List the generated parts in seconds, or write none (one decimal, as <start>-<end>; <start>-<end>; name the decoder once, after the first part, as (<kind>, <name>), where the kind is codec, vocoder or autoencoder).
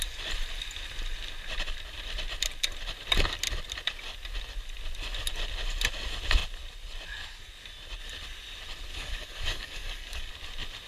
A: 8.9-10.3 (codec, DAC)